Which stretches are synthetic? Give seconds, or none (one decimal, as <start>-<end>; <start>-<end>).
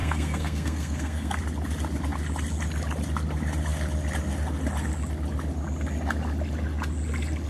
0.0-1.4